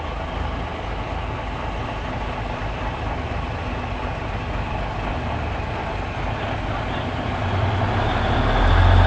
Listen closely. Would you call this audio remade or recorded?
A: recorded